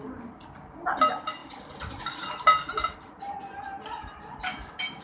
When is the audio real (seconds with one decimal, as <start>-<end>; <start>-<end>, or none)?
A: 0.0-5.0